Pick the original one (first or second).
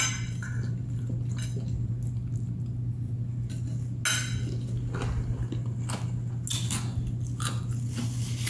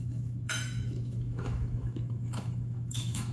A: first